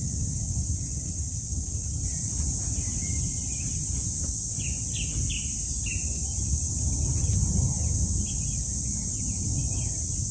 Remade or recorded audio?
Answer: recorded